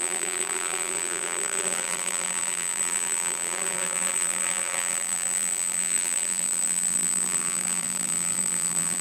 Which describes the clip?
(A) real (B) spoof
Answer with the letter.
B